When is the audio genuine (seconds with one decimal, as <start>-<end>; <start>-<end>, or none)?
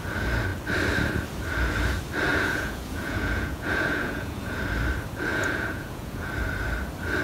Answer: 0.0-2.3; 4.6-5.3; 6.3-7.2